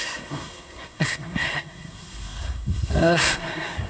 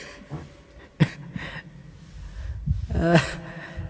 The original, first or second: second